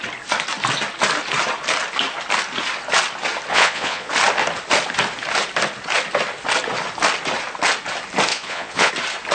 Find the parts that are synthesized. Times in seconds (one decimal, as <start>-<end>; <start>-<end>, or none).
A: 3.5-4.1; 8.3-8.9